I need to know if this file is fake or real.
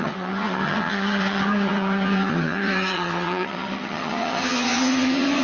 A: fake